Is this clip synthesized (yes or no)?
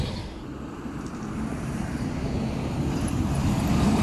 yes